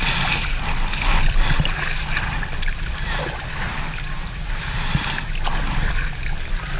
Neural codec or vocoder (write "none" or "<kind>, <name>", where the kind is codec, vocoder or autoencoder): none